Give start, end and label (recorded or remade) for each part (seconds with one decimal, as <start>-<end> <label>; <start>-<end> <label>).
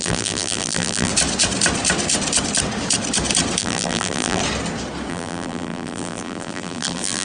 0.0-1.1 remade; 1.1-3.6 recorded; 3.6-4.4 remade; 4.4-5.1 recorded; 5.1-7.2 remade